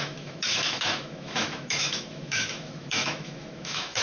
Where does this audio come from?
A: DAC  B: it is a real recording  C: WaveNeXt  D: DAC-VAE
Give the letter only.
D